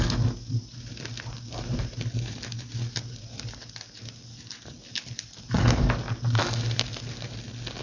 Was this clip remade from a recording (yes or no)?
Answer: no